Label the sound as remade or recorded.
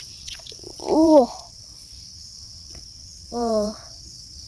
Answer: remade